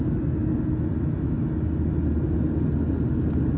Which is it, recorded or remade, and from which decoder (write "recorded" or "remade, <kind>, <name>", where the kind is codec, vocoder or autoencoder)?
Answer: recorded